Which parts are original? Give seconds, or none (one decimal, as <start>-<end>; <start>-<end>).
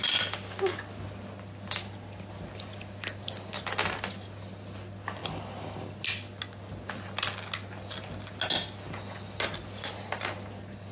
0.0-10.9